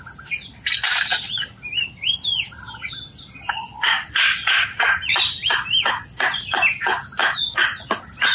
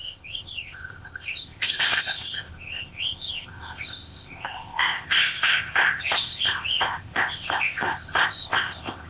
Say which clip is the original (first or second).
first